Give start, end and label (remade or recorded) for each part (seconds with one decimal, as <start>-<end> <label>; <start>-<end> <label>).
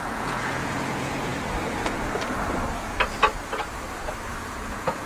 0.0-1.3 remade; 1.3-4.4 recorded; 4.4-5.1 remade